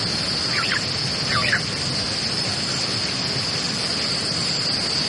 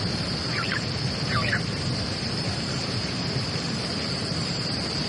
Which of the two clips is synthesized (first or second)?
second